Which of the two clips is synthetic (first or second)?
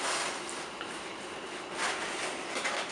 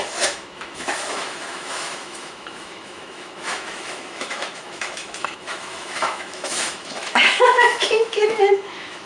second